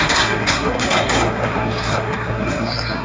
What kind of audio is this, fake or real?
fake